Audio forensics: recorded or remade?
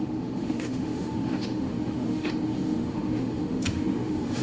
remade